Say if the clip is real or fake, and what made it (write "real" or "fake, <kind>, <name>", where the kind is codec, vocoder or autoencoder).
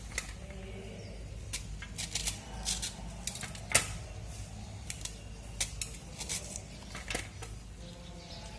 real